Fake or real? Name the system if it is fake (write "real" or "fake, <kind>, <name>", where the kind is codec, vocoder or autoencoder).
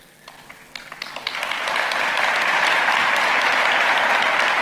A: real